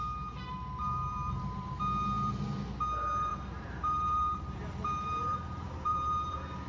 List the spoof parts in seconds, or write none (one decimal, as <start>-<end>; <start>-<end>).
0.8-1.7; 3.3-6.3